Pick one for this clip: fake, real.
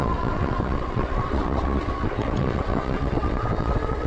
fake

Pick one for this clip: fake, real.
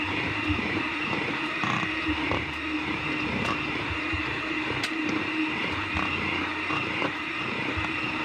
fake